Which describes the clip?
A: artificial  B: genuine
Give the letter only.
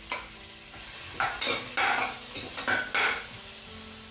B